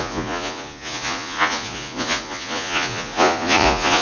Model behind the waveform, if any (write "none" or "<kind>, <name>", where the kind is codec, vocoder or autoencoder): vocoder, Vocos